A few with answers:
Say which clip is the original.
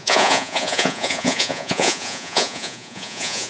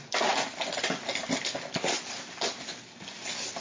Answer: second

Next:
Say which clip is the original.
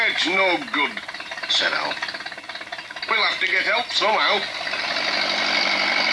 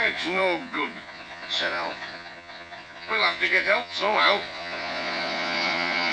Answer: first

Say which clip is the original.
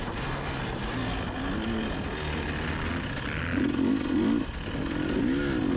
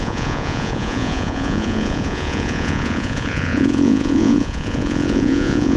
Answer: first